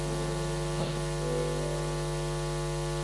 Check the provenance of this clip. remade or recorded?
recorded